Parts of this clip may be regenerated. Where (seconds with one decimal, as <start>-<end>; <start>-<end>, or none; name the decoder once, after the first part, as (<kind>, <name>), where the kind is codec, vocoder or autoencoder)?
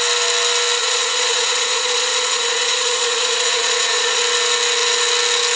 0.8-4.2 (vocoder, Vocos)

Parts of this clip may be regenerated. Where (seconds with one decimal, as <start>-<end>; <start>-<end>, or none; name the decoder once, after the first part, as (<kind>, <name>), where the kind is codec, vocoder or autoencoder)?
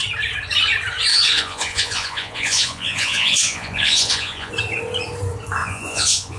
1.1-4.5 (vocoder, Vocos); 5.6-6.4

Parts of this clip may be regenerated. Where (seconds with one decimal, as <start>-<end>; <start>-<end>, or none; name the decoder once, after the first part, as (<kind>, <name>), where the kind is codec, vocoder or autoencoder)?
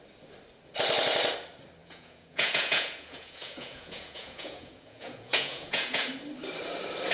1.8-6.1 (vocoder, Vocos)